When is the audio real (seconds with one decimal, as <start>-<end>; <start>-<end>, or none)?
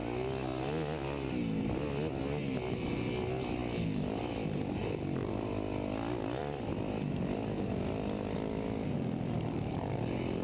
0.0-10.4